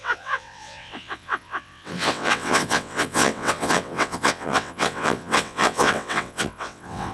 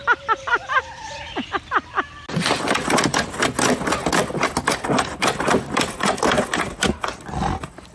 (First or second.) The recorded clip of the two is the second